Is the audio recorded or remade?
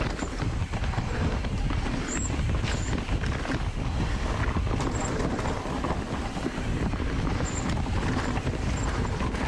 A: recorded